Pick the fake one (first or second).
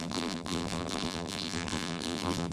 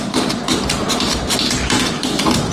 first